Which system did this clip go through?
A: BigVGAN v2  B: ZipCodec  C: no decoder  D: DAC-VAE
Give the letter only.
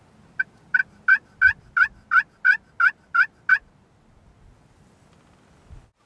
C